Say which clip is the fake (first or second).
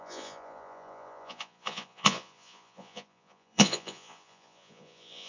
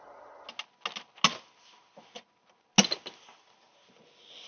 first